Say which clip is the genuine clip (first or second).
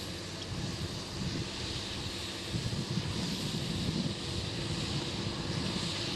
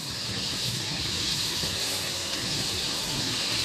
first